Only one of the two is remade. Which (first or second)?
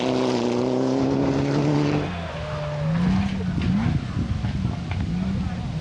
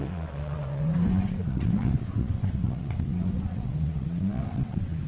second